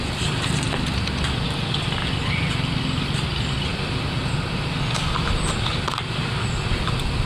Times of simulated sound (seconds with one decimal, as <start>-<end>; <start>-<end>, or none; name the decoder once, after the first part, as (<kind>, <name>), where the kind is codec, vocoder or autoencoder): none